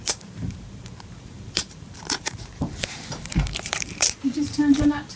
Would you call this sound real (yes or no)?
no